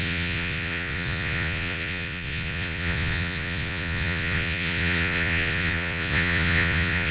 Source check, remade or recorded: remade